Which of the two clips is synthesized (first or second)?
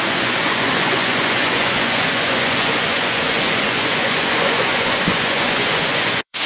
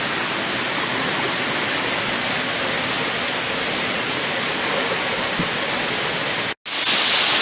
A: first